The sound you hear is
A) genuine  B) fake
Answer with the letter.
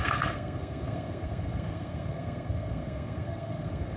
B